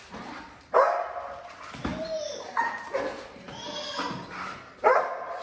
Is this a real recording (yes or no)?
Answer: yes